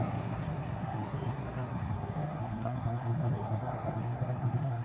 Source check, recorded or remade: remade